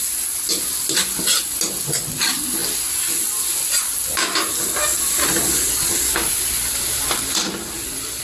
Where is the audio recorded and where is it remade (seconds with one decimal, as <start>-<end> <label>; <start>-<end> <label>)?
0.0-8.2 recorded